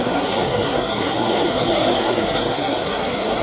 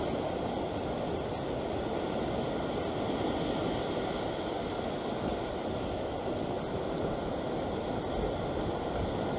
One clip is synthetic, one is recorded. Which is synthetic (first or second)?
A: first